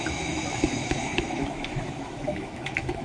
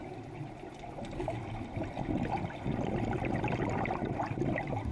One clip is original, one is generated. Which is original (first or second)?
second